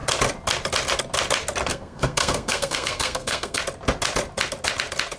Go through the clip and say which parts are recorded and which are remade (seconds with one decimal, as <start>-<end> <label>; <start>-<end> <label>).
0.0-1.7 recorded; 1.7-3.6 remade; 3.6-5.2 recorded